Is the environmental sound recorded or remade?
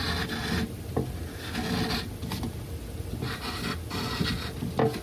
recorded